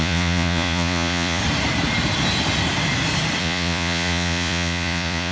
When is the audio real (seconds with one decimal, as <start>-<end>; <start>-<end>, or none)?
1.4-3.4